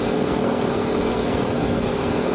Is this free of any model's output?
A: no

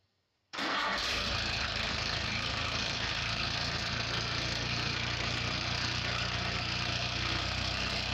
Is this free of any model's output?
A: no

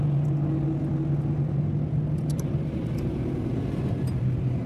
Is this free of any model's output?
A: yes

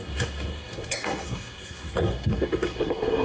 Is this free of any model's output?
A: no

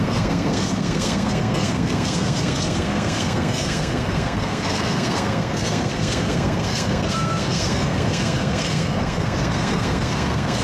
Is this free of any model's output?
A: no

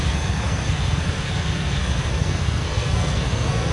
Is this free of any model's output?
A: no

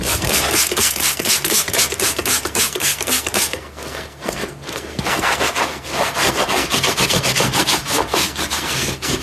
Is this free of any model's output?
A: no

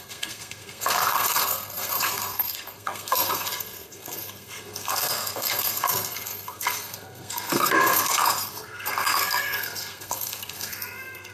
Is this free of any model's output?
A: no